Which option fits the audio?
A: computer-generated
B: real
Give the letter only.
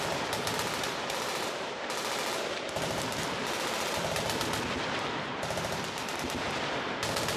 B